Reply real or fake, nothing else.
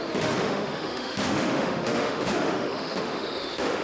fake